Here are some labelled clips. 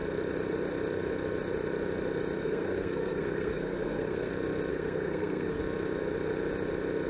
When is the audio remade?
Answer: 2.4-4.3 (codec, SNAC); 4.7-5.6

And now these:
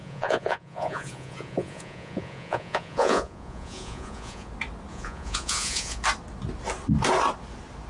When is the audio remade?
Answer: 0.0-4.5 (vocoder, Vocos); 4.9-6.0

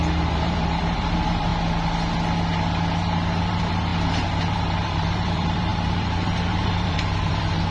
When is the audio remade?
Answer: 0.0-1.5 (vocoder, BigVGAN v2); 3.4-3.9; 4.5-7.7